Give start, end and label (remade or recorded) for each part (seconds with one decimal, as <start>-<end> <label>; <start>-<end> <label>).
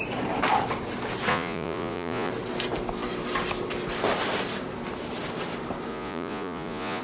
0.0-1.3 recorded; 1.3-2.3 remade; 2.3-5.9 recorded; 5.9-7.0 remade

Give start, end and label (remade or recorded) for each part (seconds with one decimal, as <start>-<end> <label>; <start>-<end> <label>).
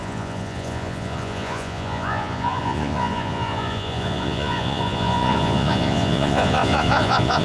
0.0-7.4 remade